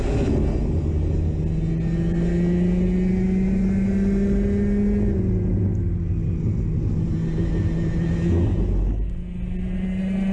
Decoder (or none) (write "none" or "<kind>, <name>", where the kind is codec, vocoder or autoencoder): none